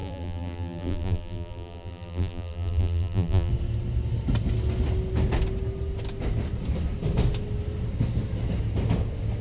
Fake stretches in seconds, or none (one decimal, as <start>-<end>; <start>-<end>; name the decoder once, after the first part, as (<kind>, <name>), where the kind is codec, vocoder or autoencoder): 0.0-3.5 (vocoder, BigVGAN v2)